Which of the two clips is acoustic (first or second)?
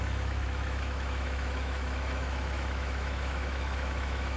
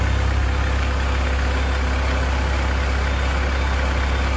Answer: second